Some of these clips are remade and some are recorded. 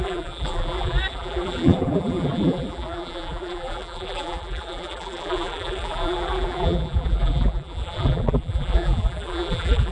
remade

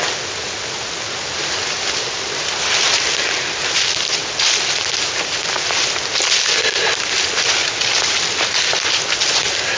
recorded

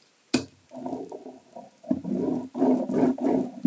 recorded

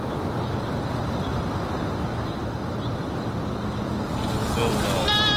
recorded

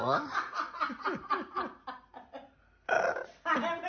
recorded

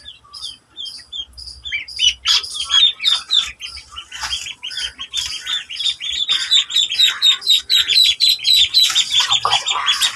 recorded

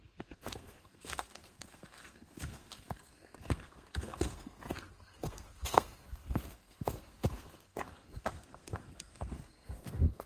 remade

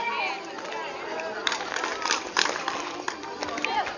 remade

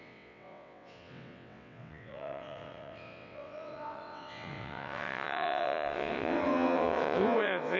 remade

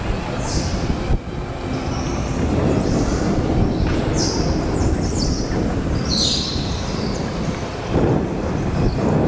recorded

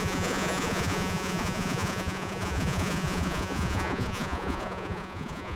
remade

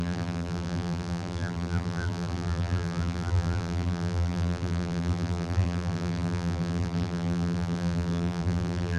remade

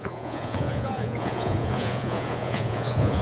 remade